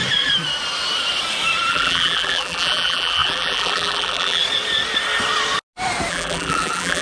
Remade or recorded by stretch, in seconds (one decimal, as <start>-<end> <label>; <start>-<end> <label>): 0.0-1.7 recorded; 1.7-4.4 remade; 4.4-6.1 recorded; 6.1-7.0 remade